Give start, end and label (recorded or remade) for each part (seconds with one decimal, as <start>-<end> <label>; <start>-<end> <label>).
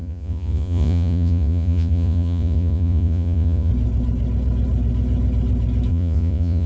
0.0-3.7 remade; 3.7-5.9 recorded; 5.9-6.7 remade